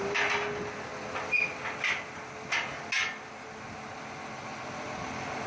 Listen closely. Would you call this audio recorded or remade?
recorded